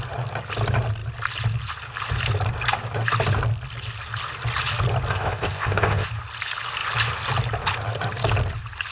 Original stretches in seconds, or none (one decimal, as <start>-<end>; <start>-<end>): 0.0-5.1; 6.1-8.9